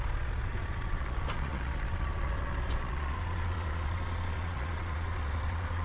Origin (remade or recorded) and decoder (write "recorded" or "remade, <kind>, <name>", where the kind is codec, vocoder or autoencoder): remade, vocoder, Vocos